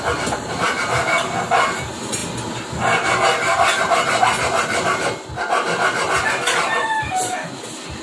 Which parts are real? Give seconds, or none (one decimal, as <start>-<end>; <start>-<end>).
0.0-8.0